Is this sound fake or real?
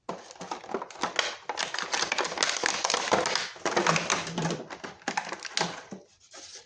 real